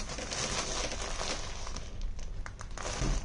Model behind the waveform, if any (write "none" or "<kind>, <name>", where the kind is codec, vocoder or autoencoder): none